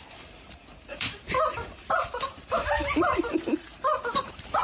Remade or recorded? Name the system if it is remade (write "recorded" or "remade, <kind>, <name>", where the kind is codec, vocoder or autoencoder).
remade, vocoder, BigVGAN v2